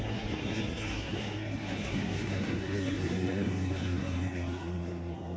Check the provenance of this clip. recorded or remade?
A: remade